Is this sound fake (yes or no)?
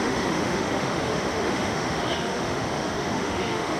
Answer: yes